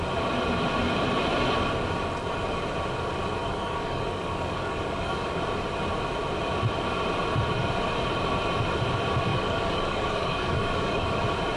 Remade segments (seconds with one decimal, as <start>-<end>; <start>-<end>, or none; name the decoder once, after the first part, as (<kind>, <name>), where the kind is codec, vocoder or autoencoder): 3.4-5.4 (codec, DAC); 9.3-11.2